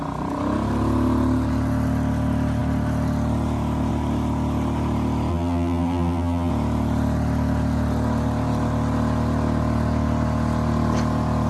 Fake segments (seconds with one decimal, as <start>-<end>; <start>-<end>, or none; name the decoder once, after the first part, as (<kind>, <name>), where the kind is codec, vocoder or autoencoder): 5.3-6.5 (vocoder, BigVGAN v2)